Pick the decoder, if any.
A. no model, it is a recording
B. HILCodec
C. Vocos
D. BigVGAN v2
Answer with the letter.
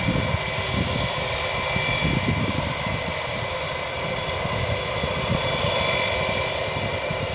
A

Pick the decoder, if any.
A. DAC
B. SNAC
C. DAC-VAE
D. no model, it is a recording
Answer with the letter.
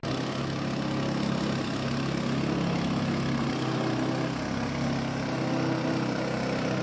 D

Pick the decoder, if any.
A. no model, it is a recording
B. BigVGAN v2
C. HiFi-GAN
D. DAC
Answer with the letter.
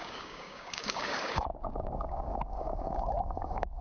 D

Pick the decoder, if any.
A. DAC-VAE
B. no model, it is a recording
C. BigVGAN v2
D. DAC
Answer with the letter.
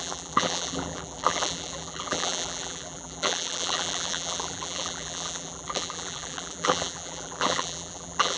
C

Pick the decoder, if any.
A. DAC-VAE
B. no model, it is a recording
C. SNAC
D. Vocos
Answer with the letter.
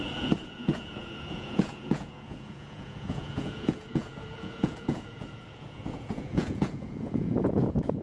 D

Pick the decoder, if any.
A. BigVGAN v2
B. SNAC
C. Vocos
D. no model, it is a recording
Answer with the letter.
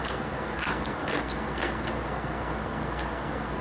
B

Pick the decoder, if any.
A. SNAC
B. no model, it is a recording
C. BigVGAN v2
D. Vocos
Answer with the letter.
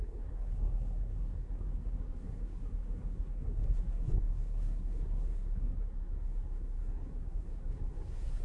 A